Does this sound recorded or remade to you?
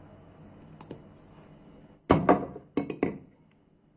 recorded